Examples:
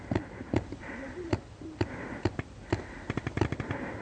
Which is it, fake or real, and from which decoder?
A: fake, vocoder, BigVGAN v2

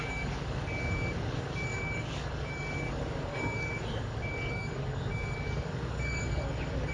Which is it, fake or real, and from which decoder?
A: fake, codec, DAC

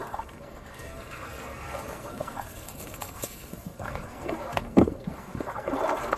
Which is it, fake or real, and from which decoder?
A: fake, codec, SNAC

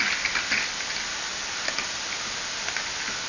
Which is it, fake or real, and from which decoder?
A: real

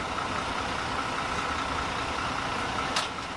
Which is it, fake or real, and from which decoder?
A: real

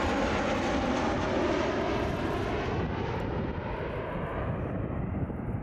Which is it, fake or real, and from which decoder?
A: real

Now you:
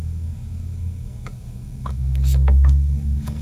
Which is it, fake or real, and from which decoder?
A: fake, codec, SNAC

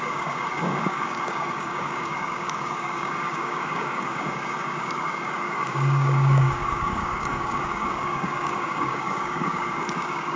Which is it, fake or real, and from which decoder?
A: fake, codec, DAC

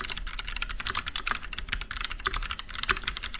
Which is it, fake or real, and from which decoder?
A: real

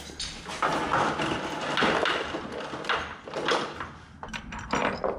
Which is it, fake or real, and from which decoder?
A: real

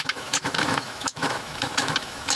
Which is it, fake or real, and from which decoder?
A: fake, autoencoder, DAC-VAE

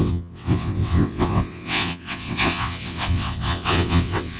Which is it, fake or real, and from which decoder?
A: fake, vocoder, WaveNeXt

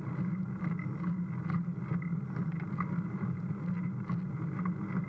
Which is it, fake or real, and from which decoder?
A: real